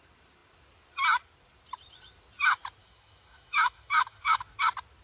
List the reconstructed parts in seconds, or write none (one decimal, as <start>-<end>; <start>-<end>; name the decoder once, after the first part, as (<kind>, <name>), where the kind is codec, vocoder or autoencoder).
2.8-4.4 (autoencoder, DAC-VAE)